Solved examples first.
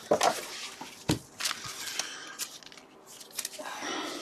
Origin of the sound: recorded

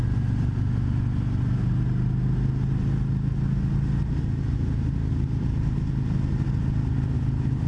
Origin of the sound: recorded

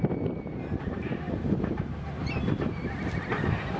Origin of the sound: remade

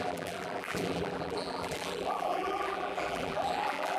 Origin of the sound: remade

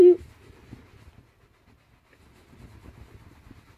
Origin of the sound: recorded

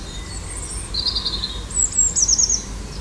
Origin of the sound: recorded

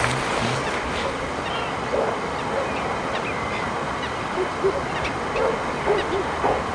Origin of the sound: recorded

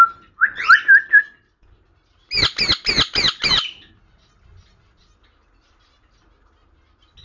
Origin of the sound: recorded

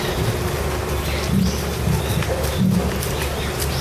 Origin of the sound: recorded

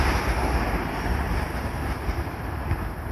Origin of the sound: recorded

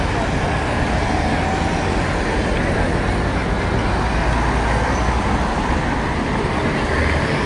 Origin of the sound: recorded